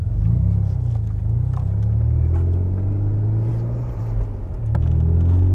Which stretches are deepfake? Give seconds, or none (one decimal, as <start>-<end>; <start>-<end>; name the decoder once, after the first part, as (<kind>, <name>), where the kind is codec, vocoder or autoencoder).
none